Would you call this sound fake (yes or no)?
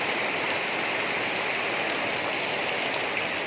no